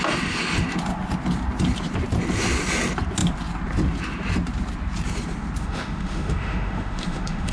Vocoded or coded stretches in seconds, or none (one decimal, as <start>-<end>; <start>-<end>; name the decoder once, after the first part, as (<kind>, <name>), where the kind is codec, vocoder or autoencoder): 5.6-7.5 (autoencoder, DAC-VAE)